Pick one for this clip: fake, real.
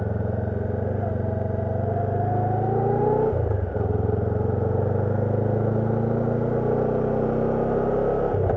real